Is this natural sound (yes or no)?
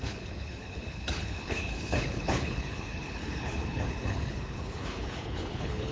no